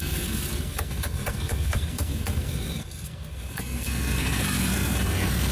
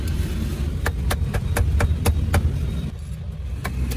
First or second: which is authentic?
second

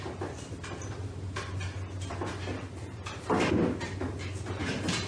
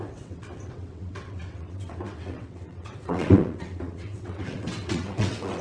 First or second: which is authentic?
first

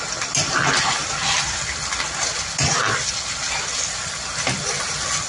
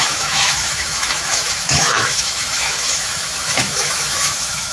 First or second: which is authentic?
first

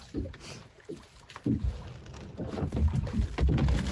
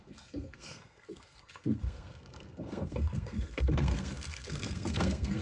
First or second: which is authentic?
first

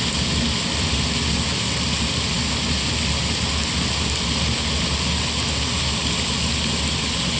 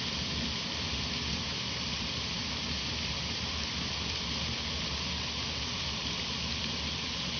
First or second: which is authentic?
first